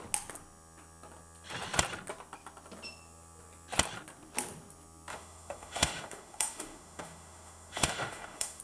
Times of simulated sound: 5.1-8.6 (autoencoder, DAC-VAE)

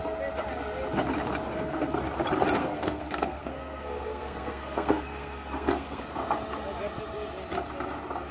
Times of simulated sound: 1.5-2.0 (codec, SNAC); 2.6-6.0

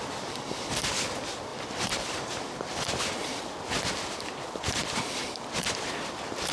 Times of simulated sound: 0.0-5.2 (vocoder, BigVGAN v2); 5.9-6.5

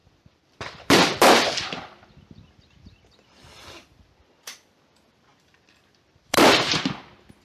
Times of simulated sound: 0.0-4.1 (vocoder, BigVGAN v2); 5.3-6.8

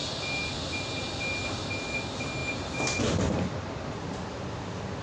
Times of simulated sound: none

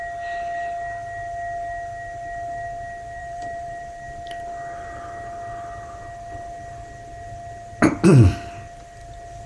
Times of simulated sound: 3.2-3.8 (vocoder, BigVGAN v2)